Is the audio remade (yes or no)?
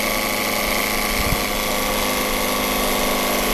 no